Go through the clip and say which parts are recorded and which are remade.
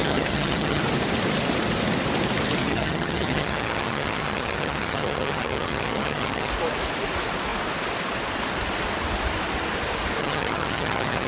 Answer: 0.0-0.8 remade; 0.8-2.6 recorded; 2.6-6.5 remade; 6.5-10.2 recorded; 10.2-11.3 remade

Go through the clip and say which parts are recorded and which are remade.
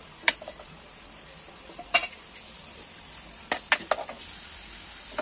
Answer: 0.0-2.0 remade; 2.0-5.2 recorded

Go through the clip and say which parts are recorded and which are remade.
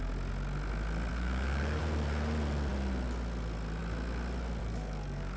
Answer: 0.0-1.1 recorded; 1.1-1.8 remade; 1.8-4.6 recorded; 4.6-5.4 remade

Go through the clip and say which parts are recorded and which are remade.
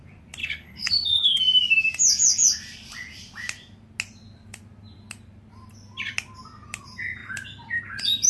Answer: 0.0-0.4 recorded; 0.4-1.4 remade; 1.4-8.3 recorded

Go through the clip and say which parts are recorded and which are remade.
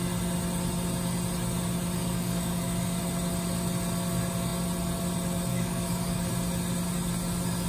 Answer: 0.0-2.0 recorded; 2.0-3.0 remade; 3.0-5.5 recorded; 5.5-6.3 remade; 6.3-7.7 recorded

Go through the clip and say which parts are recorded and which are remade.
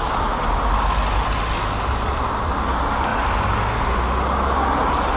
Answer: 0.0-5.2 recorded